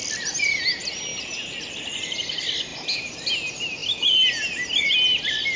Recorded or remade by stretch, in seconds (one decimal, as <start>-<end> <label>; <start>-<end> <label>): 0.0-5.6 recorded